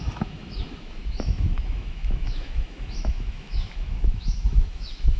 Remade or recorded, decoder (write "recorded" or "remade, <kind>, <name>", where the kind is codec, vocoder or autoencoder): remade, autoencoder, DAC-VAE